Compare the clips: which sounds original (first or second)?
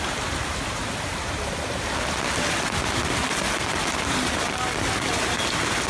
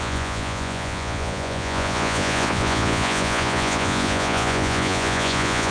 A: first